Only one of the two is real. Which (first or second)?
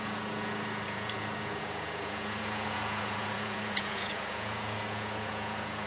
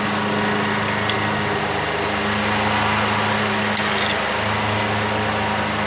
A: second